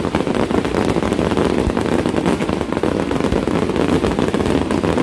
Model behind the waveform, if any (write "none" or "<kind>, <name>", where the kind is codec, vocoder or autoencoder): none